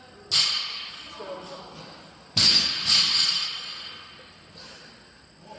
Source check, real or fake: real